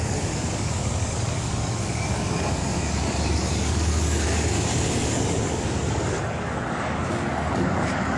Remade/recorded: remade